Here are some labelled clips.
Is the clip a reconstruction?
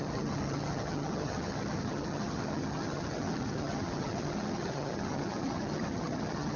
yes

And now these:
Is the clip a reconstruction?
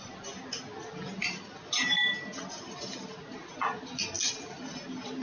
no